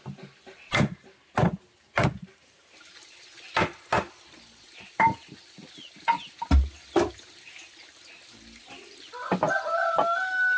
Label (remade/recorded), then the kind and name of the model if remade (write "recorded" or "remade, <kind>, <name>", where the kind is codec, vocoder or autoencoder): recorded